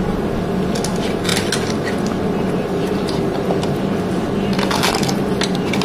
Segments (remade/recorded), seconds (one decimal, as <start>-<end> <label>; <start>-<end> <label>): 0.0-5.8 recorded